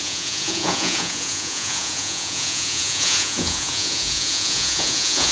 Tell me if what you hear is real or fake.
fake